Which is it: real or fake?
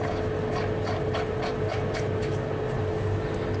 real